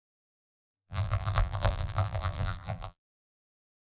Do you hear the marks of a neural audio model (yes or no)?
yes